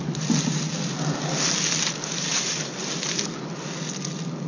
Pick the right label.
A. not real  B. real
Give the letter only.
B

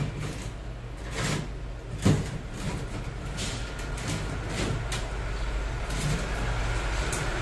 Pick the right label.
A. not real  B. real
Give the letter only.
B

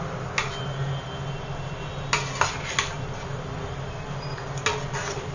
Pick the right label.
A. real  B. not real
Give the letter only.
A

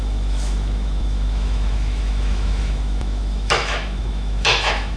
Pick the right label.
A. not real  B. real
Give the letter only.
A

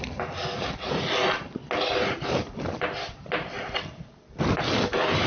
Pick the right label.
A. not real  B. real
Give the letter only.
A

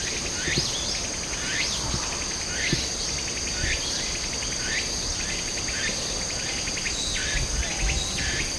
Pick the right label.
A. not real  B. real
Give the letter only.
B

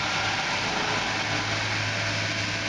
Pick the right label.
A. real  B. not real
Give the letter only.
A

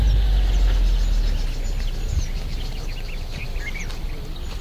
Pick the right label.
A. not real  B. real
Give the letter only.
B